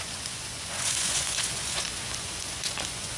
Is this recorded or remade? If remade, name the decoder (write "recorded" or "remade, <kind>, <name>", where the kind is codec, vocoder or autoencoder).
remade, vocoder, Vocos